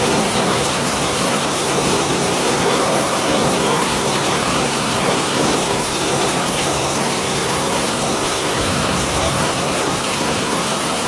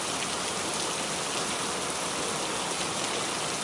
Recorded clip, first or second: second